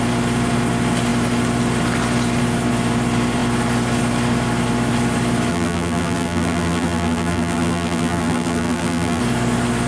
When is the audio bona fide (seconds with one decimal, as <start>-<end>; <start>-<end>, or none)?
0.0-5.5; 9.2-9.9